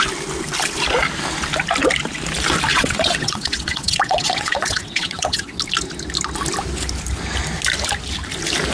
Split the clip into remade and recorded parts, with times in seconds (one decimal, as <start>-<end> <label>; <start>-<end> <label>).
0.0-2.7 recorded; 2.7-5.6 remade; 5.6-8.7 recorded